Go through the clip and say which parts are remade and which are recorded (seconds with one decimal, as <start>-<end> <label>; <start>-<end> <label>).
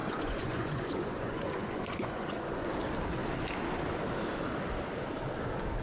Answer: 0.0-2.7 remade; 2.7-5.8 recorded